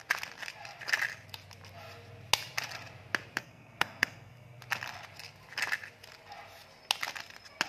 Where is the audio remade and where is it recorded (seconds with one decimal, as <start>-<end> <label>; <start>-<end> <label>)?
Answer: 0.0-3.4 recorded; 3.4-4.6 remade; 4.6-7.7 recorded